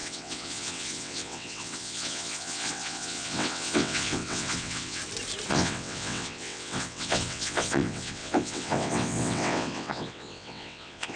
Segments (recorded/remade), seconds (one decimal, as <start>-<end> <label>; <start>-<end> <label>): 0.0-5.0 remade; 5.0-5.5 recorded; 5.5-11.2 remade